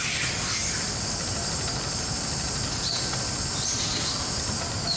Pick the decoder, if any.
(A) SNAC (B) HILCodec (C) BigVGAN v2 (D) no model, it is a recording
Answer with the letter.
D